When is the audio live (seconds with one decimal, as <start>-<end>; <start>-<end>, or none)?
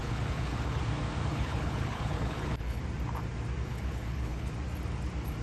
0.8-1.3; 2.8-3.7; 4.5-5.4